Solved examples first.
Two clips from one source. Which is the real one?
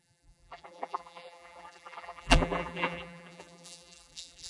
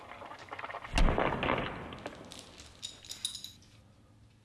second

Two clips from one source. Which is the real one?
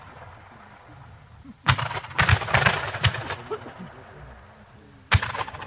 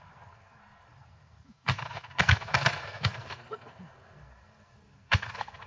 first